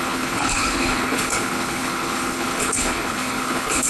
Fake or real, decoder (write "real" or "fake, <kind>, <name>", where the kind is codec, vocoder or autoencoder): fake, codec, HILCodec